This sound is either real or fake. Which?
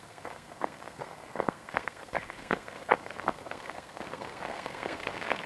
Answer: fake